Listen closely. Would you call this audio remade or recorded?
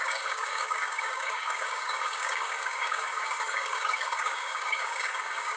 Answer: remade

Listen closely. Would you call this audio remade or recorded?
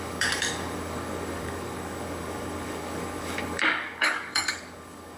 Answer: remade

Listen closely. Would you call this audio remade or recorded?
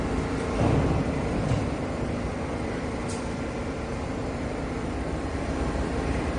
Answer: remade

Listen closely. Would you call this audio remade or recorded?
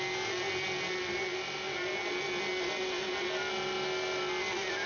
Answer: recorded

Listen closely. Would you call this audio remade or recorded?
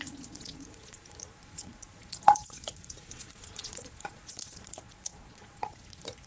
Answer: remade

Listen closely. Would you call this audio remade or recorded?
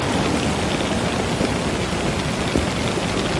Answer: recorded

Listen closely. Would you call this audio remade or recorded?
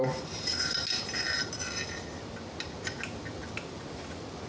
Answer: recorded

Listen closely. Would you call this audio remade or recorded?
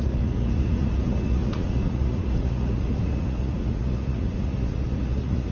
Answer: remade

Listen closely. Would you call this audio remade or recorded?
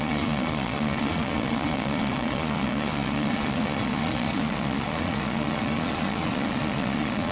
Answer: remade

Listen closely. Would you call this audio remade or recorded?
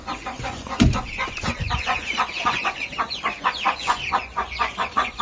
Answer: remade